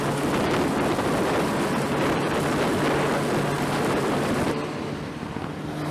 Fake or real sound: real